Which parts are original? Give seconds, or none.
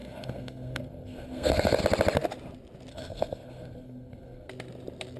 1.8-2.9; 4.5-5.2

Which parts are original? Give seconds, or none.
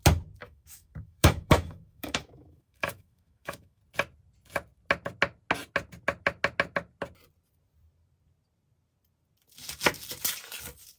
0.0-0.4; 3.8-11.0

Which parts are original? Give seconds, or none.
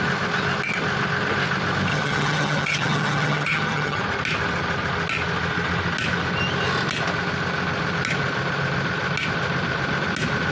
0.0-1.9; 4.0-10.5